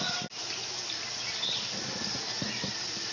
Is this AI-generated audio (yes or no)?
no